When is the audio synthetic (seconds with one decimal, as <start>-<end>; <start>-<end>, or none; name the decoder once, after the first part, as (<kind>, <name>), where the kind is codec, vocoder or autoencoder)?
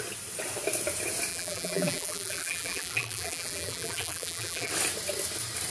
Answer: 1.3-4.7 (vocoder, BigVGAN v2)